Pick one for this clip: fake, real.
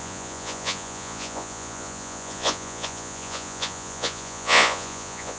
fake